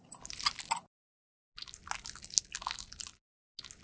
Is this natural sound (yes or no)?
yes